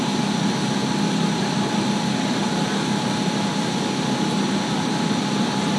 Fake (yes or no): no